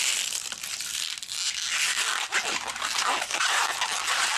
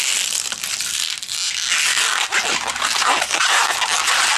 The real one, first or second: second